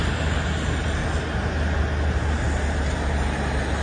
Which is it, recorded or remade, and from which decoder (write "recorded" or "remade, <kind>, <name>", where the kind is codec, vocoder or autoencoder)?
recorded